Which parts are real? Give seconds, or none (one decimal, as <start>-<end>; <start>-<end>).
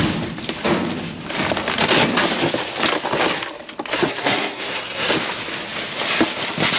0.0-3.9; 5.1-6.8